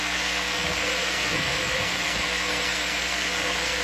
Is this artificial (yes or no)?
yes